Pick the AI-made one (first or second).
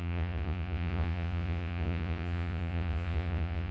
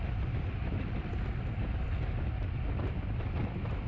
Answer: first